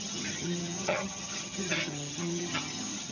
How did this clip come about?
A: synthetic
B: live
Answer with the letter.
A